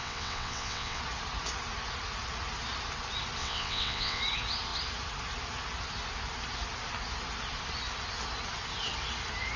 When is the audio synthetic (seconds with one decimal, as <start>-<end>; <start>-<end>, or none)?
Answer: 0.0-1.0; 3.4-4.2